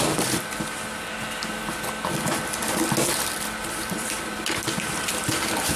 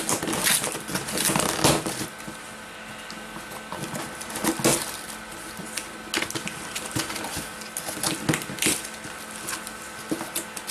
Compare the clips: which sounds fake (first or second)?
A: first